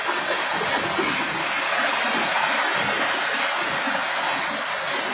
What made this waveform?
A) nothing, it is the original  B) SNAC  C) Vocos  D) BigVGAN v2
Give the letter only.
A